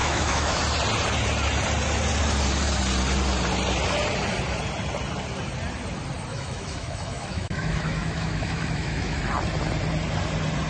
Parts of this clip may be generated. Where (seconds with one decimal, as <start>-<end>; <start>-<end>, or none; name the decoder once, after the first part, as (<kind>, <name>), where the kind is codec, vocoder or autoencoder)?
0.0-0.6 (autoencoder, DAC-VAE); 6.3-9.2